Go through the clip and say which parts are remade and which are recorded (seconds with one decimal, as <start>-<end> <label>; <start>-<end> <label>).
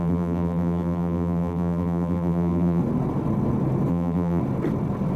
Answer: 0.0-2.8 remade; 2.8-3.9 recorded; 3.9-4.4 remade; 4.4-5.2 recorded